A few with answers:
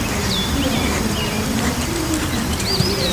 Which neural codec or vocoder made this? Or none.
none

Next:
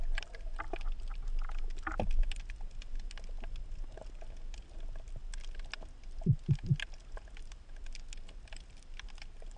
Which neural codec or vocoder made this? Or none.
none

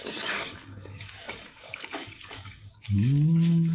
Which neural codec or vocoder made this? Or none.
codec, DAC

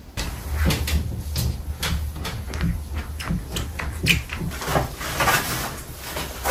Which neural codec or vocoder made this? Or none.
none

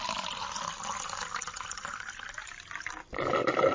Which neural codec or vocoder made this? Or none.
none